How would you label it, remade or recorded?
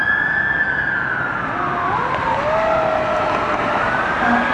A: recorded